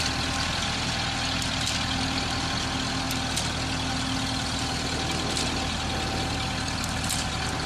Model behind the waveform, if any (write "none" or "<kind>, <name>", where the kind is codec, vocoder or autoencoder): none